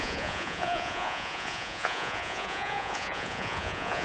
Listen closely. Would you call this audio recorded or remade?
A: remade